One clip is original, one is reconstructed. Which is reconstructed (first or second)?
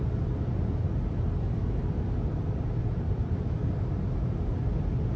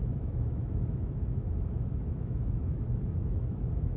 second